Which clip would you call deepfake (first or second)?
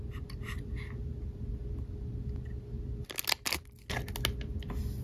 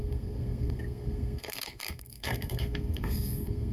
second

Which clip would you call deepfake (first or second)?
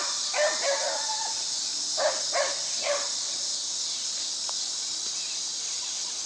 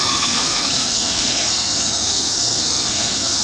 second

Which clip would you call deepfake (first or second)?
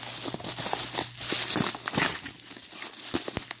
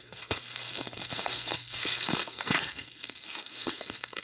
second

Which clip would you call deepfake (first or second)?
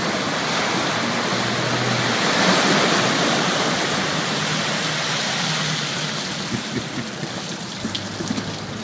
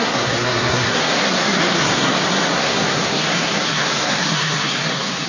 second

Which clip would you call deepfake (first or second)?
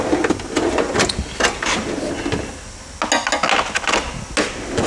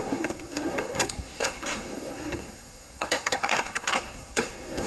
second